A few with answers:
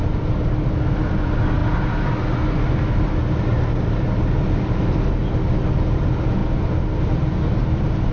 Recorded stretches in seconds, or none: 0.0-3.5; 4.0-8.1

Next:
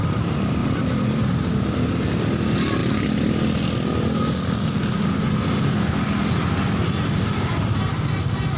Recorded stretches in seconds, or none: 0.0-0.6; 1.4-2.8; 3.3-6.8; 7.5-8.6

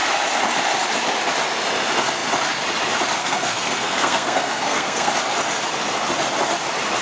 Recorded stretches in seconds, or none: 0.0-3.2; 5.1-7.0

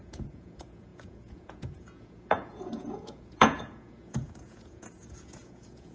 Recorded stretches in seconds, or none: none

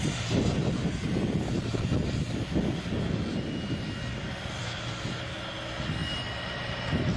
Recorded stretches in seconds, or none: 0.0-7.2

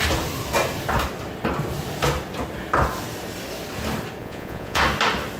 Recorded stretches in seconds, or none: 0.0-4.2; 4.8-5.4

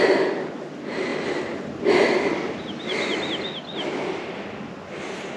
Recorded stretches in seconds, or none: 0.0-5.4